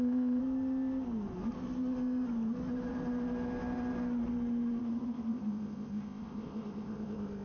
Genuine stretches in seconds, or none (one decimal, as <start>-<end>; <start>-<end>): 0.4-4.8